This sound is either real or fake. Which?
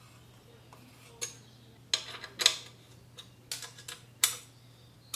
real